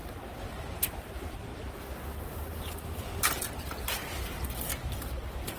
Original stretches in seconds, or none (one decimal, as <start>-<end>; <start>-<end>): 0.0-0.5; 1.5-2.6; 4.0-4.7